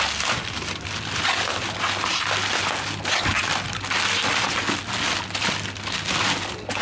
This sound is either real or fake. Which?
real